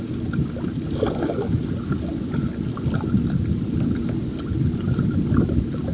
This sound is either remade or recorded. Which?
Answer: recorded